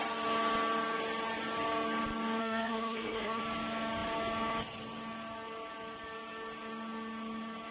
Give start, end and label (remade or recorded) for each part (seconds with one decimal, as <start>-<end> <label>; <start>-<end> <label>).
0.0-2.4 recorded; 2.4-3.4 remade; 3.4-7.7 recorded